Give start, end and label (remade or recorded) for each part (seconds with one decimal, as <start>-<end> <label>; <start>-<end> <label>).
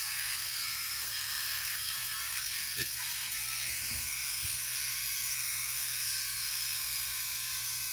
0.0-7.9 remade